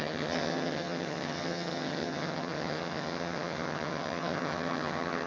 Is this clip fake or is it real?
fake